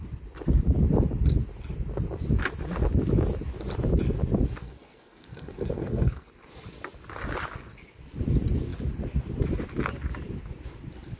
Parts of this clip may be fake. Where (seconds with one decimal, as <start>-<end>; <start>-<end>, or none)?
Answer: 4.6-6.3